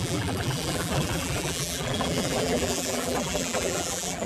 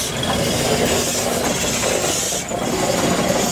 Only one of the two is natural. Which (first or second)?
second